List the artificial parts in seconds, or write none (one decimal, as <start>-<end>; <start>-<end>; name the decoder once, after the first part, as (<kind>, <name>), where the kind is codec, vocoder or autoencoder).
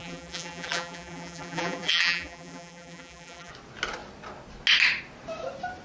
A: 0.0-3.5 (vocoder, BigVGAN v2)